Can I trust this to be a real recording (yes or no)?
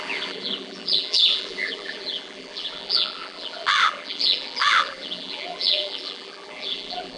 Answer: no